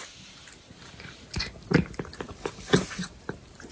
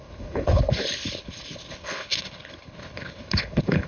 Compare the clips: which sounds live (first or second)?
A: first